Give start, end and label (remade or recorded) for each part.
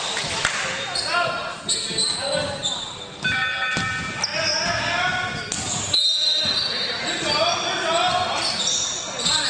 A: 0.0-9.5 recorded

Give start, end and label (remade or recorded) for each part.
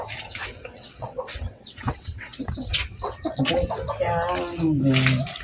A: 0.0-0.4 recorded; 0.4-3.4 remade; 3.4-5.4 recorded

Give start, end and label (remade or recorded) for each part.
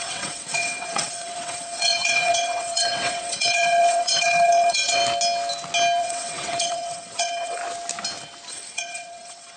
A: 0.0-5.0 remade; 5.0-6.0 recorded; 6.0-7.6 remade; 7.6-8.5 recorded; 8.5-9.6 remade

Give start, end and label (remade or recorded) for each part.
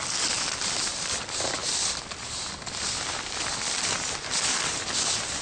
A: 0.0-5.4 recorded